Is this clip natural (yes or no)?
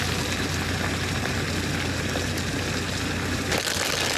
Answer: yes